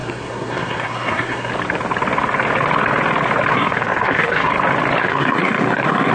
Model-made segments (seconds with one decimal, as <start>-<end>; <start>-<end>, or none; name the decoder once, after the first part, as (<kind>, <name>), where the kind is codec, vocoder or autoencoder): 0.0-1.5 (codec, SNAC); 3.5-4.5; 5.0-6.1